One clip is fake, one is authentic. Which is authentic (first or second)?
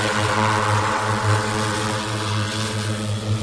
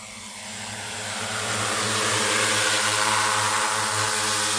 second